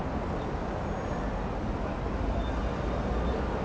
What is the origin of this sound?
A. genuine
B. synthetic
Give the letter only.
A